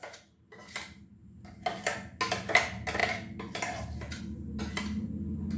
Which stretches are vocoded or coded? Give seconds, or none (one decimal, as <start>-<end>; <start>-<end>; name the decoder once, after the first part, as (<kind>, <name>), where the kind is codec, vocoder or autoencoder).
none